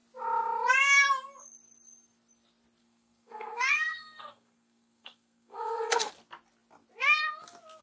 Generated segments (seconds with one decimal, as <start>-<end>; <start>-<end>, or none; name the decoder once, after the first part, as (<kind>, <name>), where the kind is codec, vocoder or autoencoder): 2.8-6.1 (codec, SNAC)